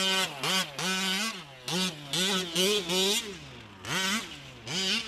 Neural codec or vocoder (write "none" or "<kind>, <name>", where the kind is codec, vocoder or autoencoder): none